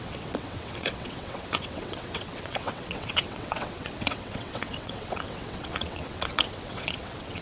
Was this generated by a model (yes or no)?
yes